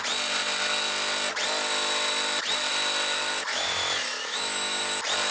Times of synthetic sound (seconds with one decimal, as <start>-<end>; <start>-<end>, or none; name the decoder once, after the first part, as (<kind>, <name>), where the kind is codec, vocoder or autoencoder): 3.5-4.8 (autoencoder, DAC-VAE)